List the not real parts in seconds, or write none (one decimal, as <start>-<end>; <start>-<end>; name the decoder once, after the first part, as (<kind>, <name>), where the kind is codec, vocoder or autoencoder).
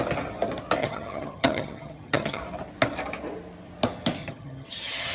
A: 0.8-2.4 (vocoder, HiFi-GAN); 4.2-5.1